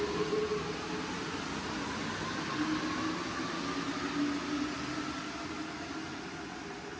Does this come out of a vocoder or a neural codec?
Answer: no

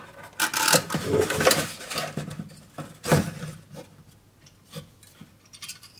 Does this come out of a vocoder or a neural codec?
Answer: no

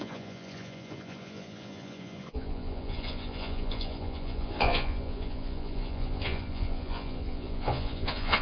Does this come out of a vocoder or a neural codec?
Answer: yes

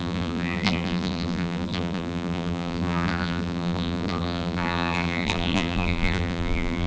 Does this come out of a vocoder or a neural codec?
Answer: yes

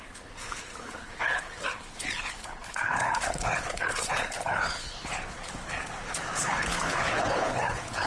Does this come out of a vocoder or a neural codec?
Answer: yes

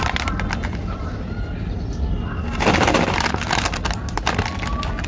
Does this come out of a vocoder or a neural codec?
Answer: no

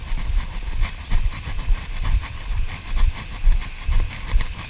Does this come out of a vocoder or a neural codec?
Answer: yes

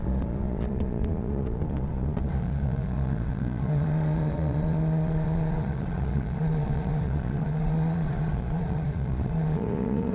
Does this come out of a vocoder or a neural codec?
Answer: yes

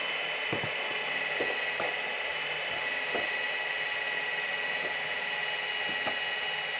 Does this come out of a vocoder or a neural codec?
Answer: no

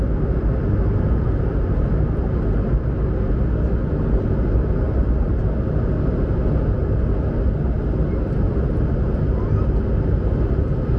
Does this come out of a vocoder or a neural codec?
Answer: no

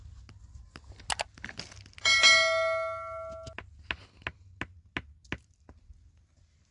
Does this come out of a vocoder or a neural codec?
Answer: no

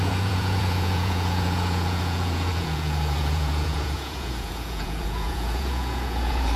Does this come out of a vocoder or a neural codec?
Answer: yes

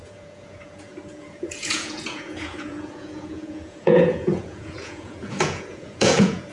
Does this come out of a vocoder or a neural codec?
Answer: yes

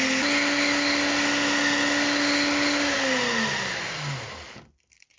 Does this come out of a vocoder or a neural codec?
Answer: no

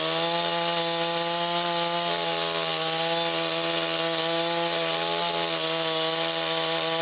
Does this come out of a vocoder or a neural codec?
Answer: no